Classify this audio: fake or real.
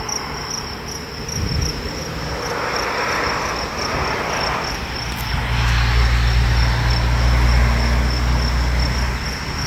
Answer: real